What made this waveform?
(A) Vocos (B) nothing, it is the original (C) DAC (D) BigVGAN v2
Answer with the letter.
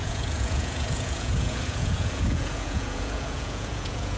A